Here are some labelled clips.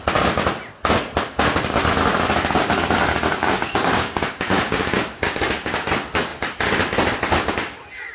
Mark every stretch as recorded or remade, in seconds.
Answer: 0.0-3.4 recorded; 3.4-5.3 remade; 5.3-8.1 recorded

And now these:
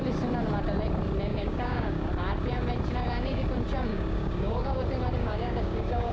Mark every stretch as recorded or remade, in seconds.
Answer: 0.0-1.3 recorded; 1.3-2.1 remade; 2.1-3.9 recorded; 3.9-4.8 remade; 4.8-5.2 recorded; 5.2-6.1 remade

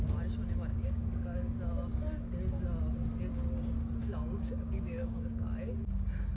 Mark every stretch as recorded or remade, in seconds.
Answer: 0.0-0.7 recorded; 0.7-1.6 remade; 1.6-4.0 recorded; 4.0-5.7 remade; 5.7-6.4 recorded

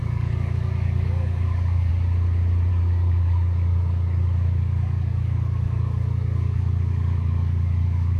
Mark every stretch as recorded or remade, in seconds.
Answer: 0.0-1.9 remade; 1.9-2.7 recorded; 2.7-8.2 remade

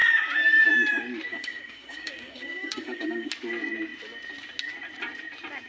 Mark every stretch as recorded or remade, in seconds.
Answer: 0.0-1.3 recorded; 1.3-3.3 remade; 3.3-5.7 recorded